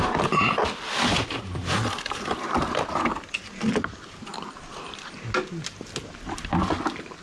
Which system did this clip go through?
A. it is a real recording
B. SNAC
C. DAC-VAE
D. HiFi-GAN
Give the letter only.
A